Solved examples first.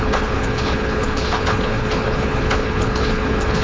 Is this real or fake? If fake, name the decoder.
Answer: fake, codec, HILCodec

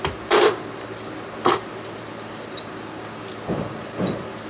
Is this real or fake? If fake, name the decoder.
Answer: fake, vocoder, BigVGAN v2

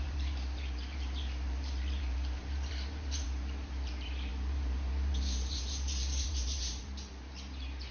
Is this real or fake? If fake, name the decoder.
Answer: fake, vocoder, BigVGAN v2